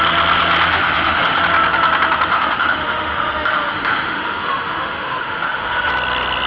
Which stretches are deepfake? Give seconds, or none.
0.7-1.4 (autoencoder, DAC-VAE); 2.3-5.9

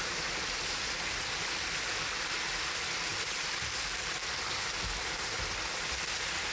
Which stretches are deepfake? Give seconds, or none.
none

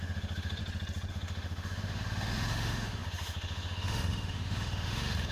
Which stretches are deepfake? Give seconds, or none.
0.0-0.6 (autoencoder, DAC-VAE); 1.1-5.3